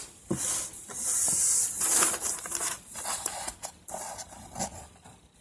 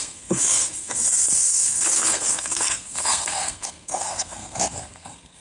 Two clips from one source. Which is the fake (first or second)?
second